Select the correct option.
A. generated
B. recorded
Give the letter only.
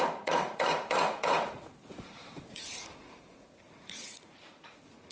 A